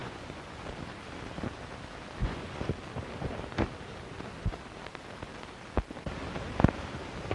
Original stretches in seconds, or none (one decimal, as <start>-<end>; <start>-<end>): 0.6-2.2; 2.7-7.3